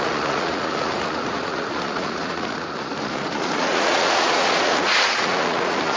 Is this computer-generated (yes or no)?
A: yes